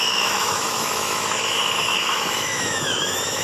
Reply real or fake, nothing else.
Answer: fake